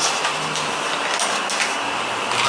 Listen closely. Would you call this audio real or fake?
real